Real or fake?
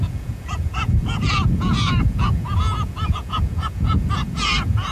fake